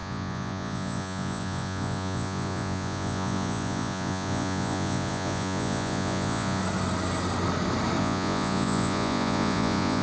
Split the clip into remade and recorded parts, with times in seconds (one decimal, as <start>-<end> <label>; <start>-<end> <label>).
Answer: 0.0-6.6 remade; 6.6-8.0 recorded; 8.0-10.0 remade